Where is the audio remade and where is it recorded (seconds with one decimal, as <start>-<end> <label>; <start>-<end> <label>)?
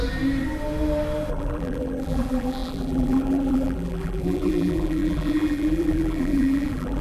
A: 0.0-1.3 recorded; 1.3-7.0 remade